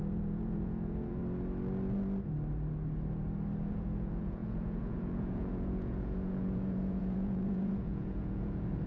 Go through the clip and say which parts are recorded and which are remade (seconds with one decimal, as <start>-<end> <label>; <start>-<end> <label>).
0.0-1.2 remade; 1.2-3.7 recorded; 3.7-8.9 remade

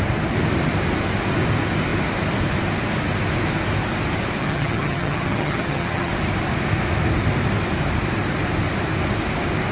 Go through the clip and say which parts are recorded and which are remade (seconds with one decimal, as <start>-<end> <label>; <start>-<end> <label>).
0.0-4.4 recorded; 4.4-6.1 remade; 6.1-9.7 recorded

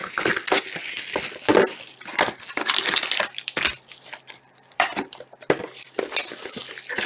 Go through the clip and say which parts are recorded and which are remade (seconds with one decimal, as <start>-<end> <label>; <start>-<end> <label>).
0.0-0.6 remade; 0.6-1.5 recorded; 1.5-5.2 remade; 5.2-6.6 recorded; 6.6-7.1 remade

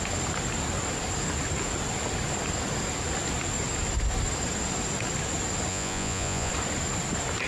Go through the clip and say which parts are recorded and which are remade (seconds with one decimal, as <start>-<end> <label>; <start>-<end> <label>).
0.0-5.7 recorded; 5.7-6.5 remade; 6.5-7.5 recorded

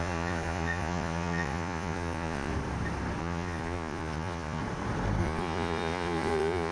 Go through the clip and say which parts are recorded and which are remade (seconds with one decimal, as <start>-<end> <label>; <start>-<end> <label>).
0.0-2.5 remade; 2.5-3.2 recorded; 3.2-4.6 remade; 4.6-5.2 recorded; 5.2-6.7 remade